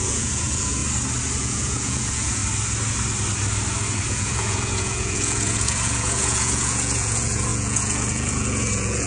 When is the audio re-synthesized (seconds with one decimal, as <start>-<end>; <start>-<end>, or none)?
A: 0.0-0.8; 1.4-2.4; 4.1-9.1